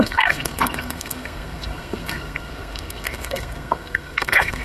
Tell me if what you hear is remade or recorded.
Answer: remade